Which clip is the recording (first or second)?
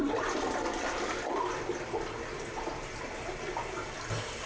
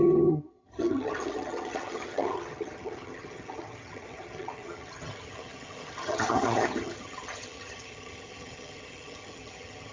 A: first